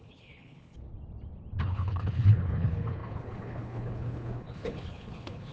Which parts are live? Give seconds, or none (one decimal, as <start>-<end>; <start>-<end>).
0.9-1.6